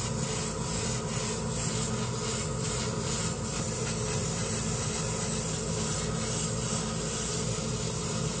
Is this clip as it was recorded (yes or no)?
yes